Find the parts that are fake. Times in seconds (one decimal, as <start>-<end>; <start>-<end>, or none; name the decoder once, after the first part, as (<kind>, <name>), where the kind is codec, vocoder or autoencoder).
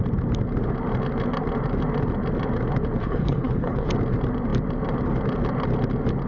3.0-3.9 (codec, HILCodec)